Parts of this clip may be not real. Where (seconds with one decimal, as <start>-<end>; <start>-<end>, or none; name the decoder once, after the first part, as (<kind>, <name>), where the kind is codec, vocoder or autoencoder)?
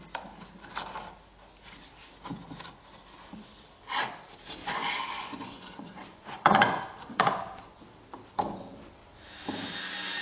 4.6-7.8 (vocoder, Vocos)